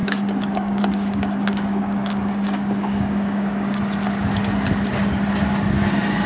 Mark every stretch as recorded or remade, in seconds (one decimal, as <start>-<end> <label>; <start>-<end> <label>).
0.0-3.8 remade; 3.8-6.3 recorded